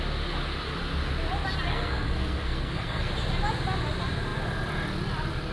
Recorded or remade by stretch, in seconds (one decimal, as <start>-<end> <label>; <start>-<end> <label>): 0.0-1.7 recorded; 1.7-3.1 remade; 3.1-5.5 recorded